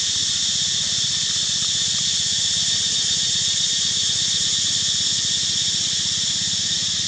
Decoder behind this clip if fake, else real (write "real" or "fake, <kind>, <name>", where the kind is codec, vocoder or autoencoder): real